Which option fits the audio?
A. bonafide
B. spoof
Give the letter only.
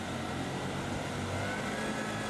A